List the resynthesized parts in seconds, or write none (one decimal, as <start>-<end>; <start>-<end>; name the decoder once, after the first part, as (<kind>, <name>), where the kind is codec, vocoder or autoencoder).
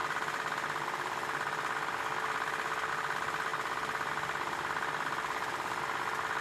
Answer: none